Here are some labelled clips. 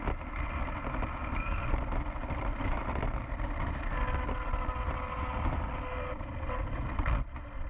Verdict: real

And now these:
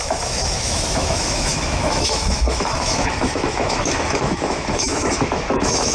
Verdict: fake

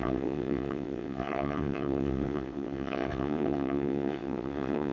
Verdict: fake